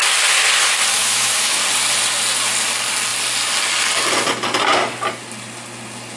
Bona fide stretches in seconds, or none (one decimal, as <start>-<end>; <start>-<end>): 0.0-0.9; 1.6-6.2